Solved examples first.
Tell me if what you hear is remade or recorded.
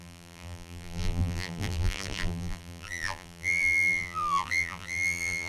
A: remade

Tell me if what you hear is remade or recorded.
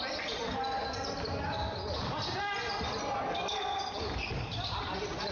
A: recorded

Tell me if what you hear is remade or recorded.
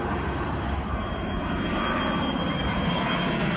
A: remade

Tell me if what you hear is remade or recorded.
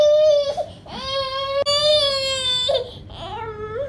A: recorded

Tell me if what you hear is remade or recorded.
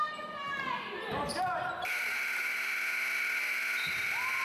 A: recorded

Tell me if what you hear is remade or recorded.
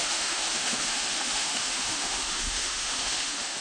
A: remade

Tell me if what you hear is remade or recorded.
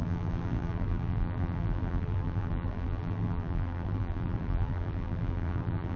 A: remade